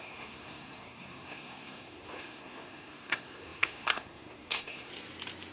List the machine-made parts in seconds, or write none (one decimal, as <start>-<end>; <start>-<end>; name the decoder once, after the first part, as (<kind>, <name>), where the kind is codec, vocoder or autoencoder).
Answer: 0.0-4.9 (codec, SNAC)